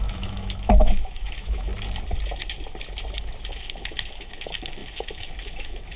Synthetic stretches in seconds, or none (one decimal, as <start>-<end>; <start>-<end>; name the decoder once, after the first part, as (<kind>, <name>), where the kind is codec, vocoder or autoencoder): 0.0-1.7 (autoencoder, DAC-VAE); 3.5-6.0